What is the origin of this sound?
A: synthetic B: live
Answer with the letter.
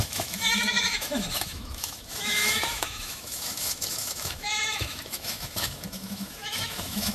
A